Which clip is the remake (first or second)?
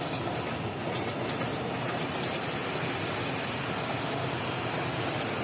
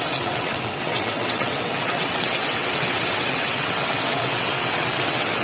second